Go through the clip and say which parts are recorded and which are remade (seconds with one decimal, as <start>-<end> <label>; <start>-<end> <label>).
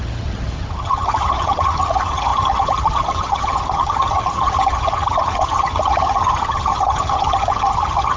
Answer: 0.0-8.2 remade